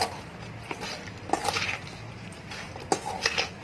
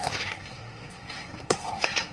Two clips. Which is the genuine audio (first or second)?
first